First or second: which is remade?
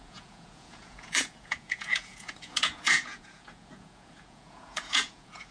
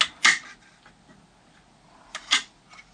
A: first